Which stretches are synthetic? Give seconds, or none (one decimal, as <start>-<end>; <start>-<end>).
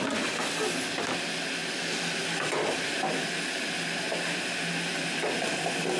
none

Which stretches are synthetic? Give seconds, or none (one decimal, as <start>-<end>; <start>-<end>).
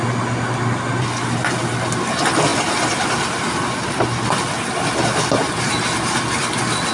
none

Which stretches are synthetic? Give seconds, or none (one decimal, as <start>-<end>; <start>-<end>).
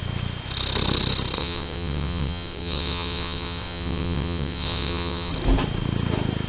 1.4-5.3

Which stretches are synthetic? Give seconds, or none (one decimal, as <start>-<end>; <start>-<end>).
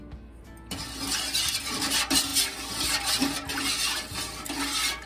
none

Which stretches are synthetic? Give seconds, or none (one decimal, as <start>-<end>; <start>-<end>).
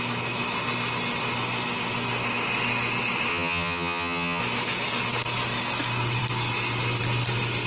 3.3-4.4